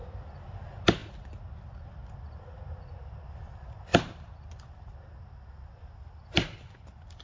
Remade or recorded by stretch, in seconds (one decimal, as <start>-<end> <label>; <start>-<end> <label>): 0.0-7.2 recorded